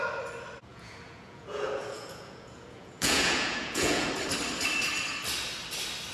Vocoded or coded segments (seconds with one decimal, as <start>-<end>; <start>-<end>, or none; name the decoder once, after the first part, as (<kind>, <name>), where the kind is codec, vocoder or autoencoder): 0.7-4.1 (vocoder, Vocos)

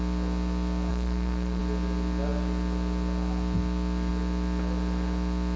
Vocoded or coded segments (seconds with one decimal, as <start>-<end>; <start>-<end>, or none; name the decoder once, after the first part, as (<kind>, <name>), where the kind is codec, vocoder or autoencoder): 0.9-1.6 (codec, SNAC)

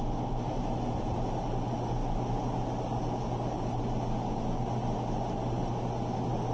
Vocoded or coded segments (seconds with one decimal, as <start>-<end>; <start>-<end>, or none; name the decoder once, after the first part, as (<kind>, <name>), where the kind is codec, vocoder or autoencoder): none

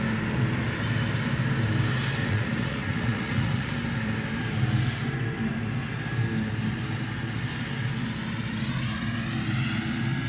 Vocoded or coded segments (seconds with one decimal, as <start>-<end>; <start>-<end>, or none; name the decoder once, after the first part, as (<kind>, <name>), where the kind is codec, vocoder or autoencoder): 2.2-3.7 (vocoder, Vocos)

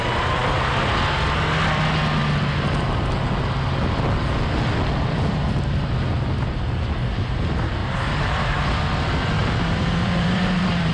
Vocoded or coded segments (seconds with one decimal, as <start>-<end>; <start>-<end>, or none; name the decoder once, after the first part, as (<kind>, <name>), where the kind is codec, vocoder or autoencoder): 7.8-8.8 (vocoder, BigVGAN v2); 9.4-10.9

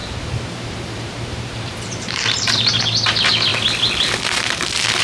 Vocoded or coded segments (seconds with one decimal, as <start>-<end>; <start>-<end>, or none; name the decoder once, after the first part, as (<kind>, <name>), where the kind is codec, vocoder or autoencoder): 0.0-2.8 (vocoder, BigVGAN v2)

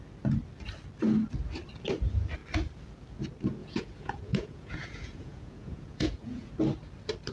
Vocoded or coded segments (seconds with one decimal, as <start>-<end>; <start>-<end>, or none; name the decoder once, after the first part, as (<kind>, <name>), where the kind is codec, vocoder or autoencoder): 3.6-6.5 (vocoder, Vocos)